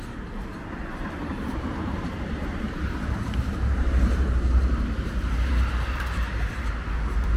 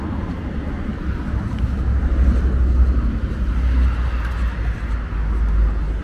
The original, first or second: second